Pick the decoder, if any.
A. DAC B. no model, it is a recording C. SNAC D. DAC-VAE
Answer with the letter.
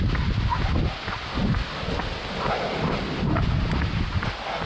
B